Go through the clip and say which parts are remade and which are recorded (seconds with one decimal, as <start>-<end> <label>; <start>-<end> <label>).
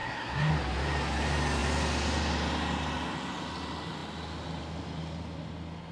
0.0-0.5 remade; 0.5-5.9 recorded